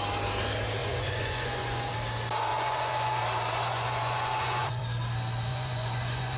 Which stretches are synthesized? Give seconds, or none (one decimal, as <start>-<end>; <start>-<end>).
0.8-1.9; 2.5-3.2; 3.7-4.8; 5.5-6.4